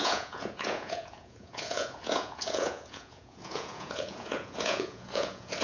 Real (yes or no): no